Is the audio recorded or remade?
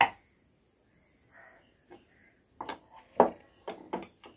recorded